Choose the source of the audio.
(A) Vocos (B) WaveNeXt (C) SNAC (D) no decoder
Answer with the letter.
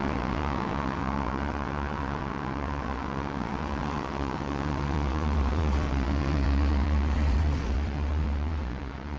B